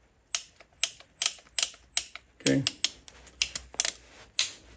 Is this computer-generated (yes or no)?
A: no